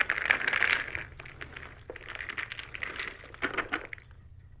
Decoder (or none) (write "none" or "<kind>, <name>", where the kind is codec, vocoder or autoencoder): none